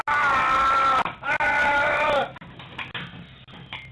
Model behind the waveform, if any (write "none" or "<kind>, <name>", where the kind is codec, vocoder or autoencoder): none